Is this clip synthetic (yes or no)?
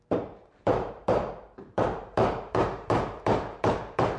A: yes